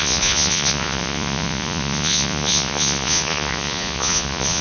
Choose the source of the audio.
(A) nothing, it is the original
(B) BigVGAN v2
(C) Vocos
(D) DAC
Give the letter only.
C